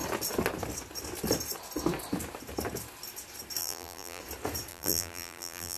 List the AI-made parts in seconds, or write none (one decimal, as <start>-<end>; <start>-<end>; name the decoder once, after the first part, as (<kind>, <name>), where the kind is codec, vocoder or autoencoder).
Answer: 3.6-4.2 (vocoder, BigVGAN v2); 4.7-5.8